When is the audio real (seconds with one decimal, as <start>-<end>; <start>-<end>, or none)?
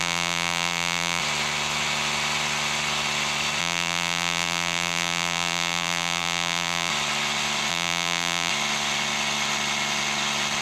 1.2-3.6; 6.9-7.7; 8.5-10.6